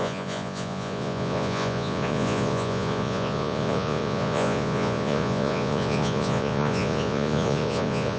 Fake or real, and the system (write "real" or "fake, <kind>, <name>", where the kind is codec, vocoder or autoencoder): fake, vocoder, Vocos